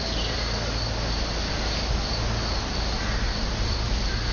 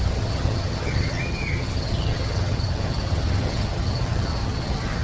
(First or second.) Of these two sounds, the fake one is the second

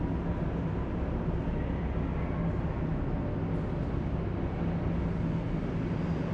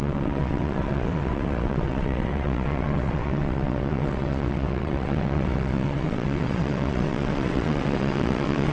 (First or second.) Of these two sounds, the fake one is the second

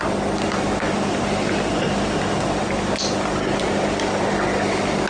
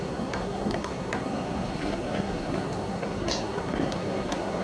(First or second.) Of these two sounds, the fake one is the second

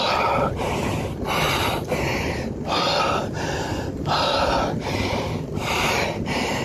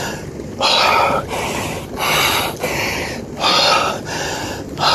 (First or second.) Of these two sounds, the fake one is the first